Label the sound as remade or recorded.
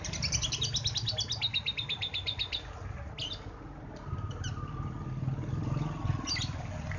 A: recorded